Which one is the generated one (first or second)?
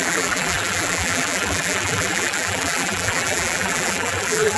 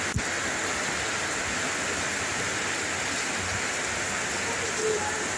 first